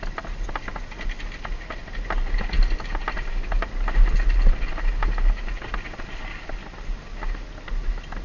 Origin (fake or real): real